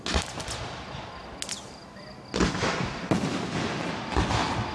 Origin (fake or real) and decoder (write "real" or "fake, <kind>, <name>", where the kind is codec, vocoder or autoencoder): real